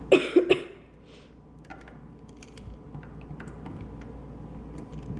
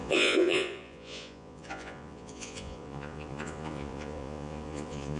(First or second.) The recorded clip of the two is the first